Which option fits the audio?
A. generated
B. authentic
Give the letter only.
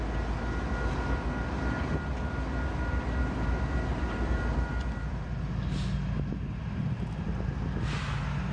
B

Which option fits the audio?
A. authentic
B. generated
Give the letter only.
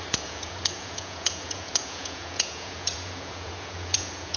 B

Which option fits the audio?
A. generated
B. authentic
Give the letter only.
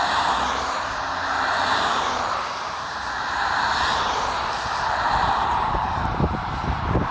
A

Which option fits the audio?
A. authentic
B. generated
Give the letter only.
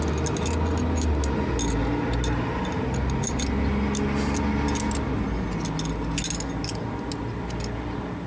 A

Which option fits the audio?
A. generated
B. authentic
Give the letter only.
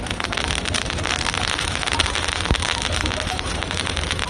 A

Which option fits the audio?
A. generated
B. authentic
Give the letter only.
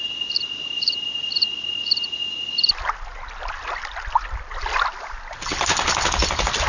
B